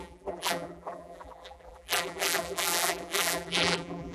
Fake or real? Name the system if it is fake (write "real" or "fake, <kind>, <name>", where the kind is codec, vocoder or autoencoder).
fake, vocoder, BigVGAN v2